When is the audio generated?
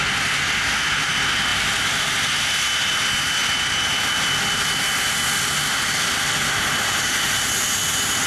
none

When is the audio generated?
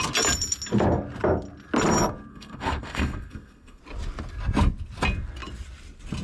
2.3-3.8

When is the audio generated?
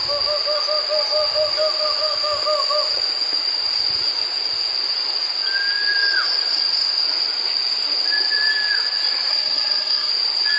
9.3-10.1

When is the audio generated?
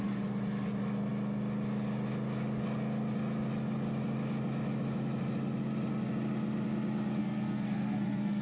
7.2-8.4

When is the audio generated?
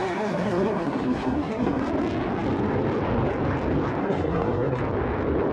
0.0-1.8; 4.0-4.8